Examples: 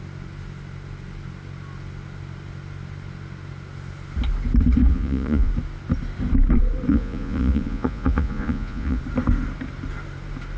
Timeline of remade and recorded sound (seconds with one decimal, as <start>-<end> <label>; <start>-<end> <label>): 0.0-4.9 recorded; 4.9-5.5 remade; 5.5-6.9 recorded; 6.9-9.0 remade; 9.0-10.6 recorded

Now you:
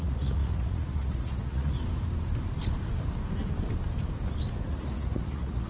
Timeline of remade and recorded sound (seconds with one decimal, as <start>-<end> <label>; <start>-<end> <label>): 0.0-1.8 remade; 1.8-4.7 recorded; 4.7-5.7 remade

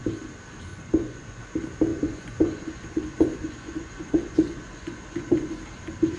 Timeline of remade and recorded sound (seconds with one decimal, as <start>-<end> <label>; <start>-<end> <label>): 0.0-0.7 recorded; 0.7-1.4 remade; 1.4-1.9 recorded; 1.9-5.6 remade; 5.6-6.2 recorded